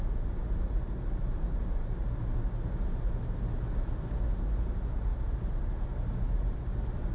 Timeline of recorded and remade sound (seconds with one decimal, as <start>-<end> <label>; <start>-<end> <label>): 0.0-5.1 recorded; 5.1-6.6 remade; 6.6-7.1 recorded